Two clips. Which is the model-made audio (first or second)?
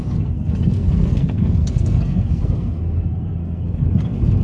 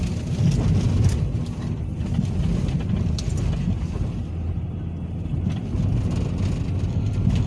first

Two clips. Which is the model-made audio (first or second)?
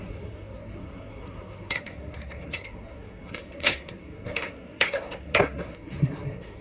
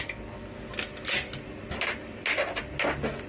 first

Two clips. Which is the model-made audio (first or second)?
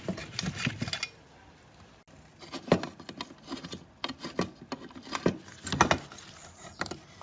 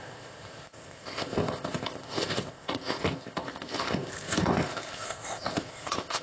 second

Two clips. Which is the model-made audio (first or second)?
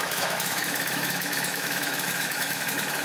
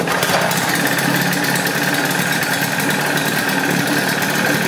first